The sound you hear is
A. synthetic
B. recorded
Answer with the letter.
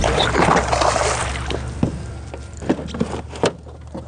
B